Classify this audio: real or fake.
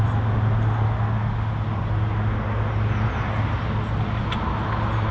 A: real